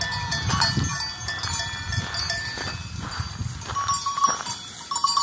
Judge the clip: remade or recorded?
recorded